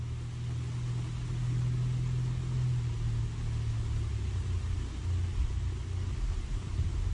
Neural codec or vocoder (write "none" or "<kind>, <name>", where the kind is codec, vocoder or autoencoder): none